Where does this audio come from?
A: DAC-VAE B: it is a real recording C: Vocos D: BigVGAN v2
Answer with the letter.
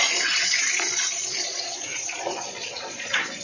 C